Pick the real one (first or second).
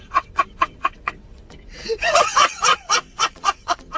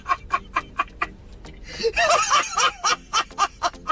second